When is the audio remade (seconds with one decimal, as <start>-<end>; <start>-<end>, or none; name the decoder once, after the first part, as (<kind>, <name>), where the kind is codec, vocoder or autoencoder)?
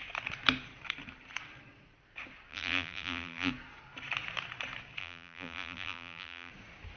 2.5-3.5 (vocoder, BigVGAN v2); 5.0-6.5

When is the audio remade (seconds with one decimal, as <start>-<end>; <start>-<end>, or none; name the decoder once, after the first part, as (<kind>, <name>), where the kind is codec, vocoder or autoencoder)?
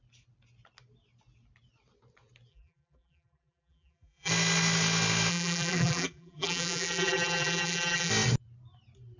2.5-4.3 (vocoder, BigVGAN v2); 5.3-8.1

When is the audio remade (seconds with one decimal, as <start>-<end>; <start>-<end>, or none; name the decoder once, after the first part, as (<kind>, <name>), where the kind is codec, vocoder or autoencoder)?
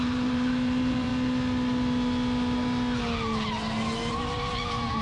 0.0-1.1 (vocoder, BigVGAN v2); 4.1-5.0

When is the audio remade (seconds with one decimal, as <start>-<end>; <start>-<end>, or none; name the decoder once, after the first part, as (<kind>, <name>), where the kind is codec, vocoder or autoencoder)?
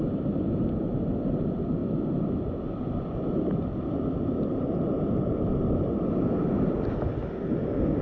0.0-1.8 (vocoder, BigVGAN v2); 3.0-7.2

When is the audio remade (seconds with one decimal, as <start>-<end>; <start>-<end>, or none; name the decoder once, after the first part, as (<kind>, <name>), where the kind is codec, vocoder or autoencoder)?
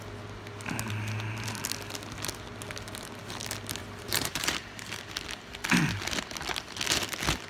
3.8-5.0 (vocoder, BigVGAN v2)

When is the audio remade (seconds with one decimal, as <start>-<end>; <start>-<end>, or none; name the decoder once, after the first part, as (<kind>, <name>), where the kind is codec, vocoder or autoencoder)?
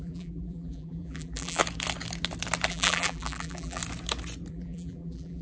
0.0-1.6 (vocoder, BigVGAN v2); 2.7-3.8; 4.5-5.4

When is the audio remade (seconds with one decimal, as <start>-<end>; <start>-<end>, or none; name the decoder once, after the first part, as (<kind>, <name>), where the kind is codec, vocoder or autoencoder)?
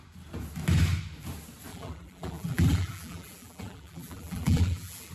1.7-5.1 (vocoder, BigVGAN v2)